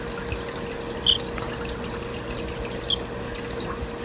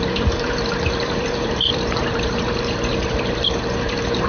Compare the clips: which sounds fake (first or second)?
second